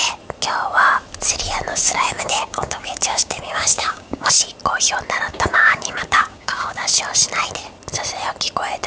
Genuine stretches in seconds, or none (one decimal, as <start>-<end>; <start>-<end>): 0.0-1.7; 4.3-5.3; 7.0-8.9